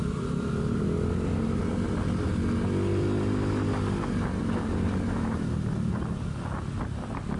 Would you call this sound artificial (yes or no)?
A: no